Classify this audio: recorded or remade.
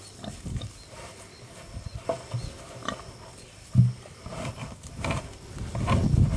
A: recorded